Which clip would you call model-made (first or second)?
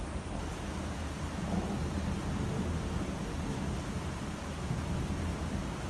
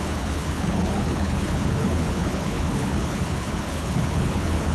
second